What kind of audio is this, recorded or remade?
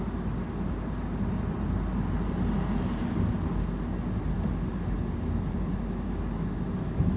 recorded